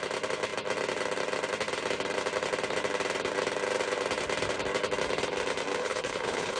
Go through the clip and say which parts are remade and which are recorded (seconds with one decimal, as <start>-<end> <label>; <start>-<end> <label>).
0.0-5.8 recorded; 5.8-6.6 remade